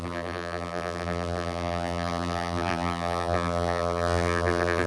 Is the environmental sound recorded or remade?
remade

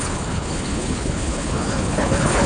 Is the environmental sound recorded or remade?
remade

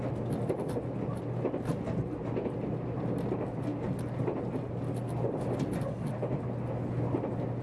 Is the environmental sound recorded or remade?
recorded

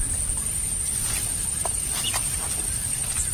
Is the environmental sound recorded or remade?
recorded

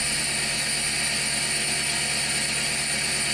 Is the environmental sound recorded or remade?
recorded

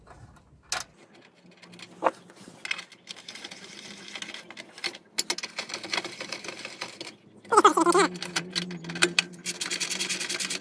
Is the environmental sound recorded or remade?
recorded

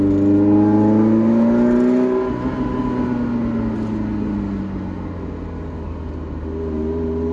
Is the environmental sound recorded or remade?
recorded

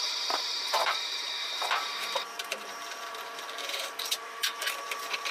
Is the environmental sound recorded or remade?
remade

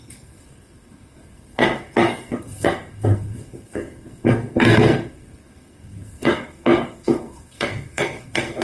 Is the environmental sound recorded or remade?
remade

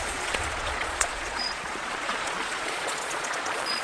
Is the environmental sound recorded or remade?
remade